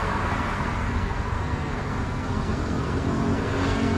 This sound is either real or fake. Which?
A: fake